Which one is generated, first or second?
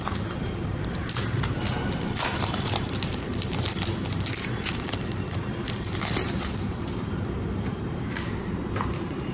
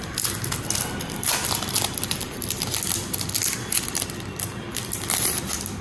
first